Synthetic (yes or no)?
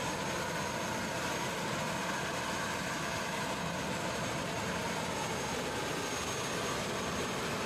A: no